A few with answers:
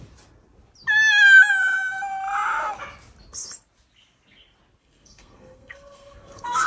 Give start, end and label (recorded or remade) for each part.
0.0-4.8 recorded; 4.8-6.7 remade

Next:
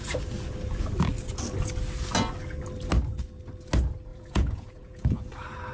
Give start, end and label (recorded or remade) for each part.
0.0-4.1 recorded; 4.1-5.3 remade; 5.3-5.7 recorded

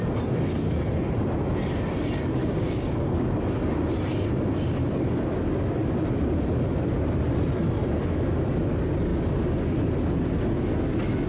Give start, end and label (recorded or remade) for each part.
0.0-2.4 recorded; 2.4-3.3 remade; 3.3-11.3 recorded

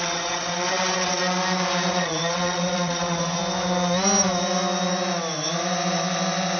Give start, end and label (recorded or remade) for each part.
0.0-1.2 remade; 1.2-1.9 recorded; 1.9-3.4 remade; 3.4-6.6 recorded

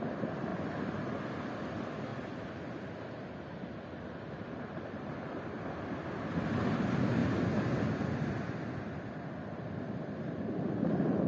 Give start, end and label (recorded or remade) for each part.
0.0-11.3 recorded